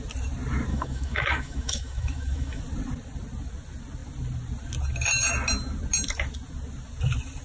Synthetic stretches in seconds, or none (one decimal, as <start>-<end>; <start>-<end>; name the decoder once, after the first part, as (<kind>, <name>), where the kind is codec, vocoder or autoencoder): 0.7-2.6 (autoencoder, DAC-VAE)